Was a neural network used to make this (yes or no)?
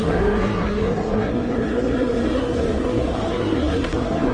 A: yes